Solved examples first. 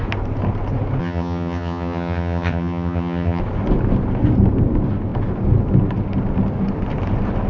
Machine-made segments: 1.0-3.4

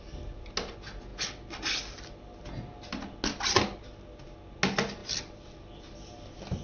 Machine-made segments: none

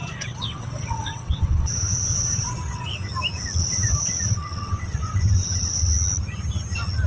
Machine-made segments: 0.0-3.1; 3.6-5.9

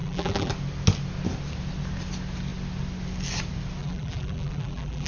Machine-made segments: 0.0-0.5; 3.8-5.1